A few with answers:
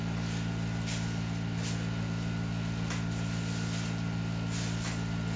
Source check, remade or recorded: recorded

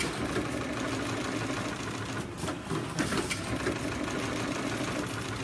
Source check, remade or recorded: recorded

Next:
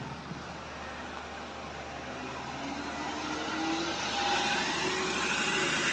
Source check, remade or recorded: recorded